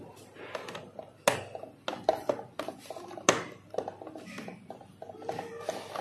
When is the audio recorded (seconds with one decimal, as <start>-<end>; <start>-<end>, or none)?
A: 0.0-6.0